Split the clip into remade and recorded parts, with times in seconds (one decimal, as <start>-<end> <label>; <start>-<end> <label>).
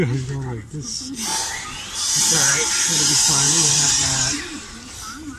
0.0-1.3 recorded; 1.3-4.4 remade; 4.4-5.4 recorded